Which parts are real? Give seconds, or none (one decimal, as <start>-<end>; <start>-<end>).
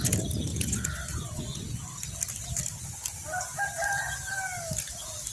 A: 0.0-0.5; 1.6-5.3